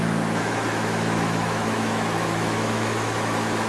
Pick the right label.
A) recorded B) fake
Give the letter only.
B